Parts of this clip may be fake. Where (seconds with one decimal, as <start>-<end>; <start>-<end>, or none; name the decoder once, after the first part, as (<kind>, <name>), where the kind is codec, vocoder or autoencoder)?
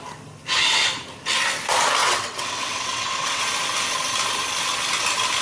2.0-3.4 (vocoder, WaveNeXt)